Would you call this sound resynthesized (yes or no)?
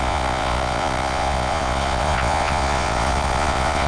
yes